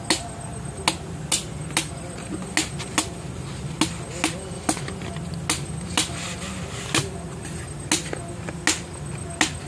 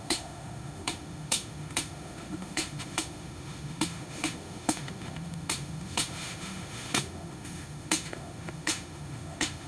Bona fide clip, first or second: first